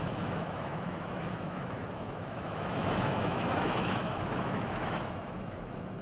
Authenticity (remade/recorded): remade